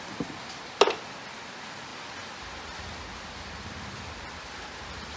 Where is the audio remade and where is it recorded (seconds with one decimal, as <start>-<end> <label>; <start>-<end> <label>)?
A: 0.0-5.2 recorded